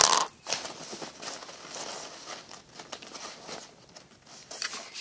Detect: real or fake real